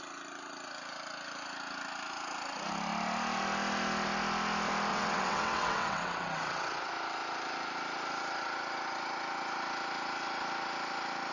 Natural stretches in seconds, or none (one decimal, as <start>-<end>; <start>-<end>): 0.0-4.9; 6.9-11.3

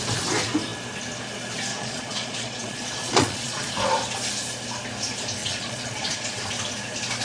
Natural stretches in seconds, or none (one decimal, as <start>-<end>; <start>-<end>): 0.0-1.7; 3.7-5.4; 6.3-7.2

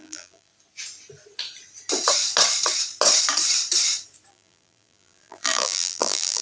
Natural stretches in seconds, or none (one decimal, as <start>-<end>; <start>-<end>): 0.5-4.3

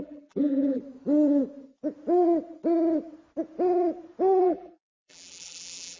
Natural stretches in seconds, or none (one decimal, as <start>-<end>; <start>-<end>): 0.8-4.4

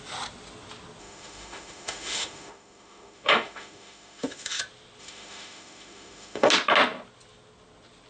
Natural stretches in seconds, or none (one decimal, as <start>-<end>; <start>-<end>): 0.0-1.0; 4.6-5.0; 6.5-8.1